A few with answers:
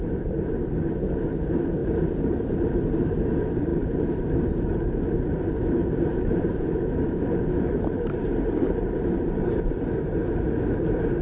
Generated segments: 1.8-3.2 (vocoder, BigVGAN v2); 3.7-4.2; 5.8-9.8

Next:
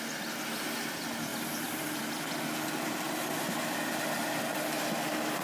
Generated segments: 1.3-4.5 (vocoder, BigVGAN v2)

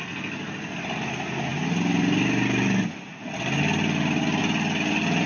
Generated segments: none

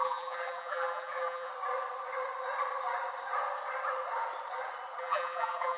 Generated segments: 0.0-1.5 (vocoder, BigVGAN v2); 5.0-5.8